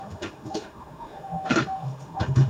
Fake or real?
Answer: fake